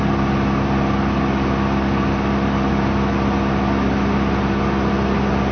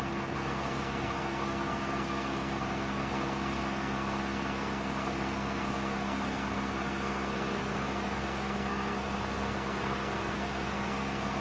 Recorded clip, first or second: first